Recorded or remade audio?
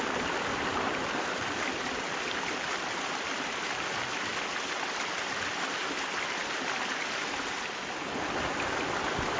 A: recorded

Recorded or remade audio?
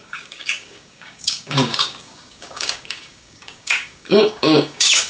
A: remade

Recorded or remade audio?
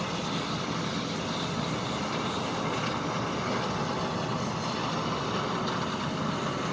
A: recorded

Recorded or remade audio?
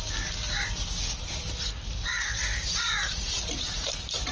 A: recorded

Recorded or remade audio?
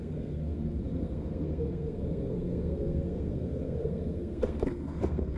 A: remade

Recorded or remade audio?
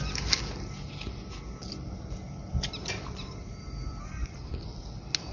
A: recorded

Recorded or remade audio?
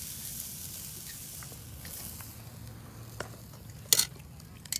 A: recorded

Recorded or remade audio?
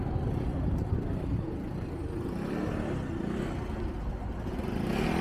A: recorded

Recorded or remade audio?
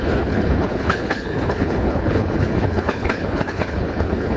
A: remade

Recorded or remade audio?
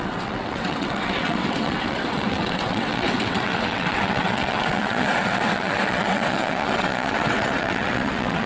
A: remade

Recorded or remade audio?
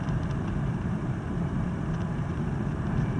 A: remade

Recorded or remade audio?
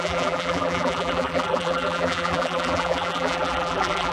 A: remade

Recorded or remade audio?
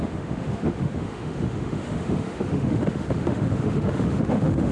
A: remade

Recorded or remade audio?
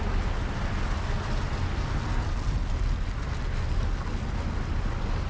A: recorded